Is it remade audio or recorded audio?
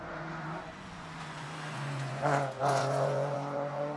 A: remade